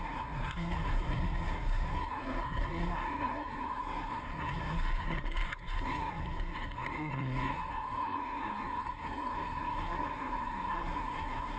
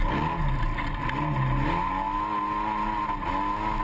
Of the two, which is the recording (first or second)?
second